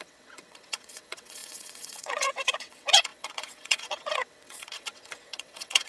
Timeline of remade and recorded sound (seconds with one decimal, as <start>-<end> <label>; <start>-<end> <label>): 0.0-5.9 remade